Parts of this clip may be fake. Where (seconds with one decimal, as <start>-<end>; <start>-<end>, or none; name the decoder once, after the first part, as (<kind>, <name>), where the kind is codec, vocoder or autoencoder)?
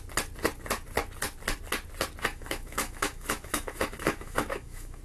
2.3-5.0 (autoencoder, DAC-VAE)